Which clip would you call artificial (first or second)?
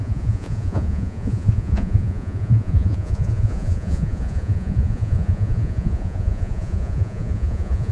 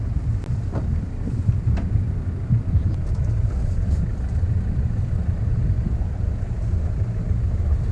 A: first